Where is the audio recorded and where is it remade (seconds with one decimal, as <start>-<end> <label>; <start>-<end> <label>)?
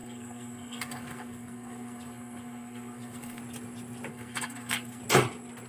0.0-3.4 remade; 3.4-4.1 recorded; 4.1-5.0 remade; 5.0-5.7 recorded